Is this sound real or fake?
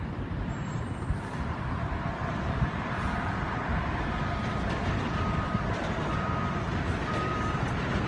fake